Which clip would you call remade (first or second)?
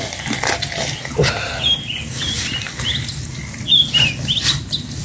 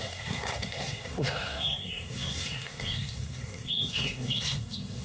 second